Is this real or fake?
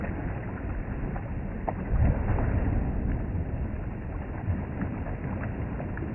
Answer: real